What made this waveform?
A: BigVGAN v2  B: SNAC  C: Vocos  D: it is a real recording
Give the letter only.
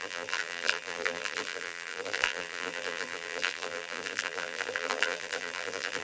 A